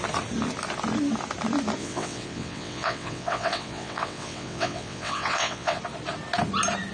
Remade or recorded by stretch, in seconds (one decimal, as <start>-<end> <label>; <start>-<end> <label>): 0.0-1.8 recorded; 1.8-5.8 remade; 5.8-6.9 recorded